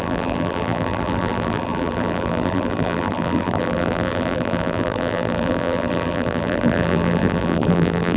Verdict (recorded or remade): remade